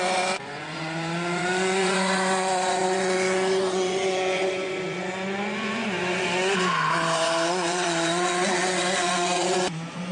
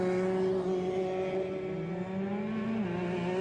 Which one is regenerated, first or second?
first